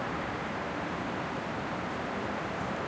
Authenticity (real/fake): fake